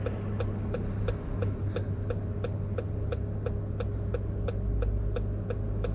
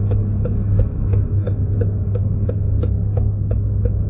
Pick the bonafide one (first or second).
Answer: first